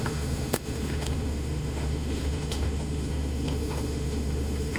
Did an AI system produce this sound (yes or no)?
yes